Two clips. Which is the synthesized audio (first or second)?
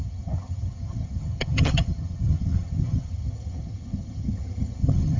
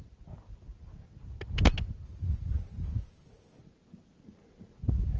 first